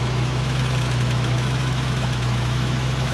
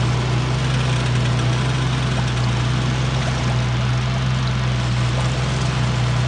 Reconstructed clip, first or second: first